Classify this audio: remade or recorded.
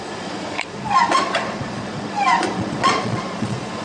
remade